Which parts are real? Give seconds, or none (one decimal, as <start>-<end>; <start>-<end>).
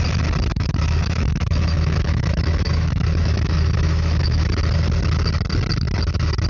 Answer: 0.0-0.5; 4.4-6.5